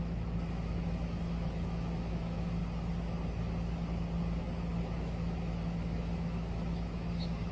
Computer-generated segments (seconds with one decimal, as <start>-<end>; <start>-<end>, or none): 0.0-2.6; 5.0-7.5